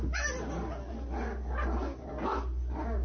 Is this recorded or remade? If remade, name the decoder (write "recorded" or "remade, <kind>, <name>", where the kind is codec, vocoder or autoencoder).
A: recorded